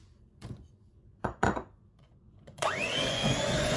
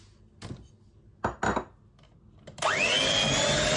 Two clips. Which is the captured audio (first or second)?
second